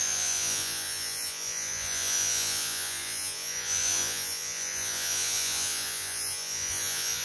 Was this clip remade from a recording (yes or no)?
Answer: yes